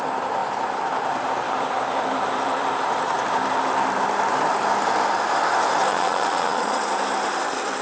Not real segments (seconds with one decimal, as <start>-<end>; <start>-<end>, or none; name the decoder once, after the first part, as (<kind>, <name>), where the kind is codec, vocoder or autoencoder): 5.9-6.8 (vocoder, Vocos)